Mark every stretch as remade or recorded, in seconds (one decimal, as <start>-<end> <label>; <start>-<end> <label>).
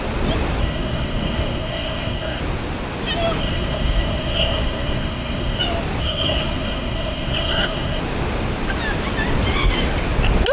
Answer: 0.0-0.6 recorded; 0.6-2.4 remade; 2.4-3.4 recorded; 3.4-5.6 remade; 5.6-6.0 recorded; 6.0-8.0 remade; 8.0-10.5 recorded